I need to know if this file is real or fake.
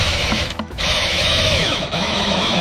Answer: fake